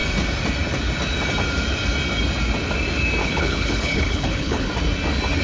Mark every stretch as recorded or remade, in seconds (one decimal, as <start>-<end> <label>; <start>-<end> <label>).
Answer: 0.0-3.2 recorded; 3.2-4.7 remade; 4.7-5.4 recorded